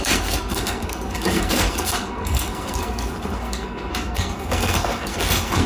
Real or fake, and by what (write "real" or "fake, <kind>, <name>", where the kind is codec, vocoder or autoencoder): fake, codec, SNAC